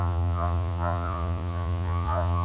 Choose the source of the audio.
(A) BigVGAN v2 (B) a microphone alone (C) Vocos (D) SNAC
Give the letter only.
C